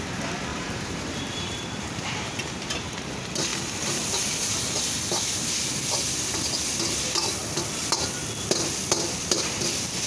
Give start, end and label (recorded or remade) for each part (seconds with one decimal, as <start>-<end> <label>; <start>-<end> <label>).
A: 0.0-0.5 recorded; 0.5-2.7 remade; 2.7-3.5 recorded; 3.5-4.6 remade; 4.6-9.2 recorded; 9.2-9.7 remade; 9.7-10.1 recorded